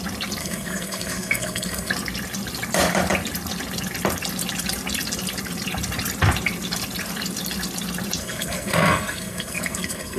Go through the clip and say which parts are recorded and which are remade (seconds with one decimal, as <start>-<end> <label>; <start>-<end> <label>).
0.0-0.4 recorded; 0.4-1.9 remade; 1.9-8.2 recorded; 8.2-10.2 remade